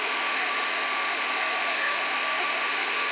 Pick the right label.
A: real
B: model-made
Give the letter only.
B